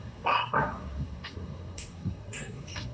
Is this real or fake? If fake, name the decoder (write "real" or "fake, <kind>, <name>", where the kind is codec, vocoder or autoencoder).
fake, codec, SNAC